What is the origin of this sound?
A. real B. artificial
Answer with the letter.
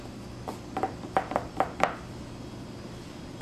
A